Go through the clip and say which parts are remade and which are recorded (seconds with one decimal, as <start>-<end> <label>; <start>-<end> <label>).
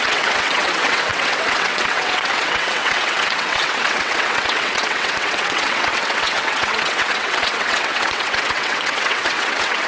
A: 0.0-9.9 remade